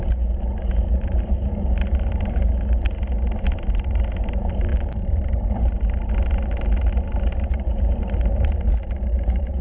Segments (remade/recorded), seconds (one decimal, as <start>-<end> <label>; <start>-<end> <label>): 0.0-9.6 recorded